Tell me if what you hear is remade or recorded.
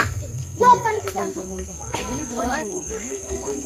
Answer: remade